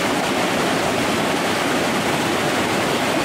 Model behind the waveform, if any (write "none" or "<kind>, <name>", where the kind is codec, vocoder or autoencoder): none